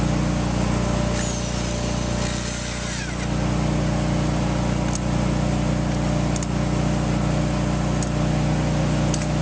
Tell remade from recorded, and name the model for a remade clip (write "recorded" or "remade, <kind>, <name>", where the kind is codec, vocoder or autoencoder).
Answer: recorded